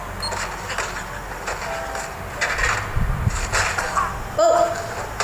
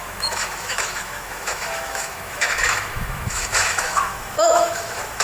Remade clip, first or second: second